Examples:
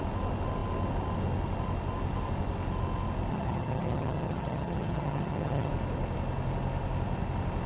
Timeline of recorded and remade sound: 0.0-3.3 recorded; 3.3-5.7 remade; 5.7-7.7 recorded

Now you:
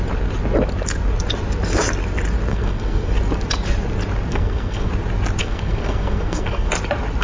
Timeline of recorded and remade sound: 0.0-2.5 recorded; 2.5-3.1 remade; 3.1-4.3 recorded; 4.3-4.9 remade; 4.9-5.4 recorded; 5.4-6.7 remade; 6.7-7.2 recorded